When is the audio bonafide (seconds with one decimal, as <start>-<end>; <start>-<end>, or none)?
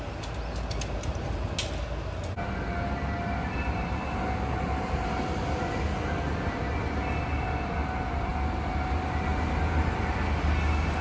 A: 0.0-11.0